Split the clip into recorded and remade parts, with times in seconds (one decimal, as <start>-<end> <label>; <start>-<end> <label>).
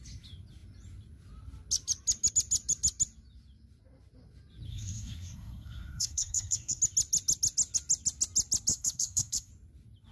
0.0-4.7 recorded; 4.7-6.8 remade; 6.8-8.7 recorded; 8.7-9.5 remade; 9.5-10.1 recorded